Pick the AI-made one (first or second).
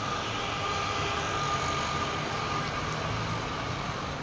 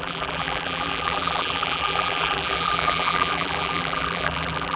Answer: second